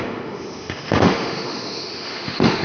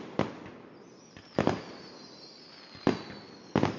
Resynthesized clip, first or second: first